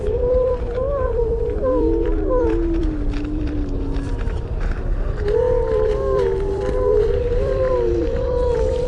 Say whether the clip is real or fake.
fake